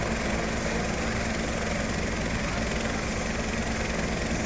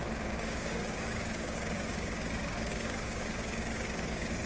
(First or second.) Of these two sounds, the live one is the first